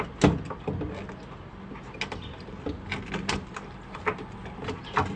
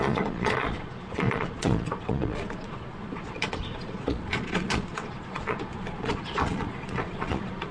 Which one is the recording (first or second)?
first